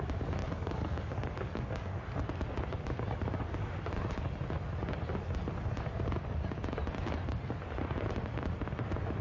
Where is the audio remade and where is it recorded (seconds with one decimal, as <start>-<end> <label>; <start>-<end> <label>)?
0.0-0.4 recorded; 0.4-2.0 remade; 2.0-9.2 recorded